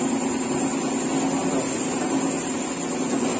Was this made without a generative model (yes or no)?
yes